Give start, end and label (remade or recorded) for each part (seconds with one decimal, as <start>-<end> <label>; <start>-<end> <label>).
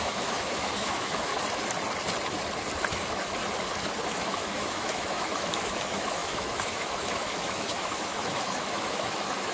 0.0-1.3 remade; 1.3-2.9 recorded; 2.9-3.4 remade; 3.4-4.1 recorded; 4.1-9.5 remade